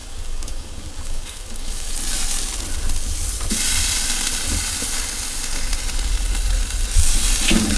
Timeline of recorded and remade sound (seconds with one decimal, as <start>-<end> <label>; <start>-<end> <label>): 0.0-1.9 remade; 1.9-7.8 recorded